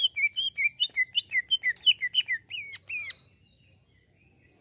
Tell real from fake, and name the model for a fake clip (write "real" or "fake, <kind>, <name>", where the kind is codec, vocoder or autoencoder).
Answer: real